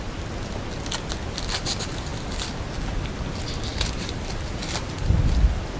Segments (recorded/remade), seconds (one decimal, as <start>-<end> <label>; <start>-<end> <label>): 0.0-3.7 recorded; 3.7-4.9 remade; 4.9-5.8 recorded